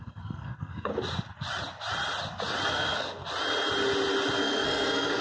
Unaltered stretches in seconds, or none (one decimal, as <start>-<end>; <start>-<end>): 0.9-2.7; 3.2-4.4